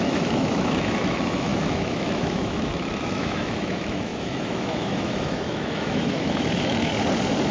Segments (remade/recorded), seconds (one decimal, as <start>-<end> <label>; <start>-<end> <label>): 0.0-6.9 remade; 6.9-7.5 recorded

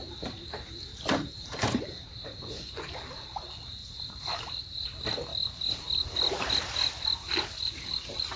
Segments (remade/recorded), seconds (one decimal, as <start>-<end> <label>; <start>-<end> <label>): 0.0-0.9 recorded; 0.9-2.6 remade; 2.6-3.8 recorded; 3.8-4.6 remade; 4.6-8.4 recorded

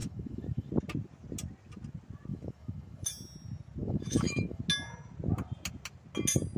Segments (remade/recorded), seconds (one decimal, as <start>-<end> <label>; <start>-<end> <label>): 0.0-0.7 remade; 0.7-2.3 recorded; 2.3-3.1 remade; 3.1-3.8 recorded; 3.8-4.6 remade; 4.6-6.6 recorded

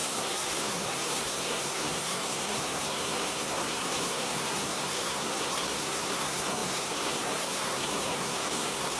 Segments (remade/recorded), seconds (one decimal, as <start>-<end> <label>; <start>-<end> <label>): 0.0-9.0 remade

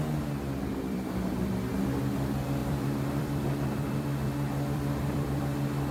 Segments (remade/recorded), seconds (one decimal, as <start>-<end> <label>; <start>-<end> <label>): 0.0-0.7 recorded; 0.7-1.5 remade; 1.5-2.6 recorded; 2.6-5.4 remade; 5.4-5.9 recorded

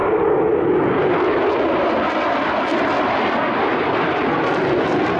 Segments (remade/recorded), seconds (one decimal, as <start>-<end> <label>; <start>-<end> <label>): 0.0-5.2 recorded

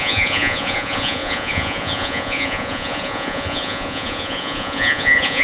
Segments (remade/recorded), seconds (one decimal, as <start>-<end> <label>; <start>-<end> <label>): 0.0-5.4 remade